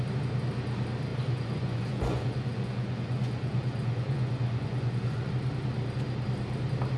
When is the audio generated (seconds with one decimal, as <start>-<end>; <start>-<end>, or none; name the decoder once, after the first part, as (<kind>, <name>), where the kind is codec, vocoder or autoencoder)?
1.1-5.3 (vocoder, Vocos)